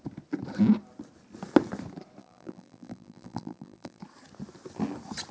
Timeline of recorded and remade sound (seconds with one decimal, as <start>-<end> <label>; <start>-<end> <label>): 0.0-2.2 recorded; 2.2-4.0 remade; 4.0-5.3 recorded